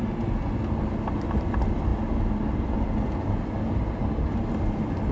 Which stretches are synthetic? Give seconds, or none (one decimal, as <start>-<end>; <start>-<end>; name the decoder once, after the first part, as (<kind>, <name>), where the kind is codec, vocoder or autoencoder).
none